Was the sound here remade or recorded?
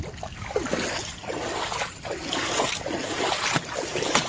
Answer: recorded